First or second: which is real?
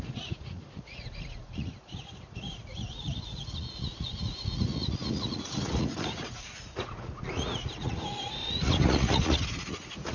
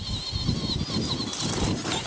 second